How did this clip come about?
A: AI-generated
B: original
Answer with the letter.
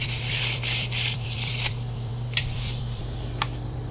A